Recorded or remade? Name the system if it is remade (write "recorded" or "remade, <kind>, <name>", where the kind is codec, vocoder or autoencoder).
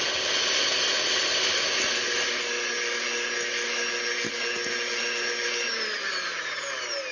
recorded